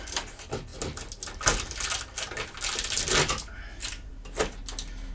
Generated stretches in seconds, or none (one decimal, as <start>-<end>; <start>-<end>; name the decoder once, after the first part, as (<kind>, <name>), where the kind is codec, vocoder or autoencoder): none